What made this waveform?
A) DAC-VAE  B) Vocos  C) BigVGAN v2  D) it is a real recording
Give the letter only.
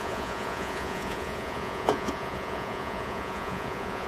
B